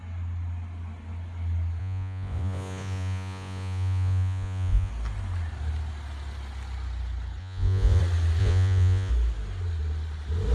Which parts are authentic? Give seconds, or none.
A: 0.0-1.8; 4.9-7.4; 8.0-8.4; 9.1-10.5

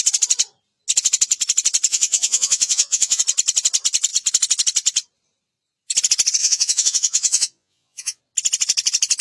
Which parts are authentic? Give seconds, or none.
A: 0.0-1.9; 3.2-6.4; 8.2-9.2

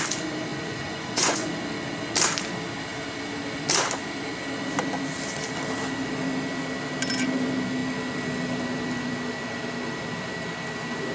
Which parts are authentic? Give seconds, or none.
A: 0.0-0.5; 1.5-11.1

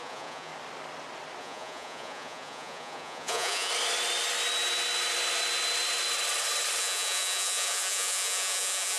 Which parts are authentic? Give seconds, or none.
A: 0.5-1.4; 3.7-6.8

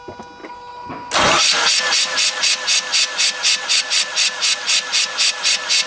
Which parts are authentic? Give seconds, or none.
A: 0.0-5.9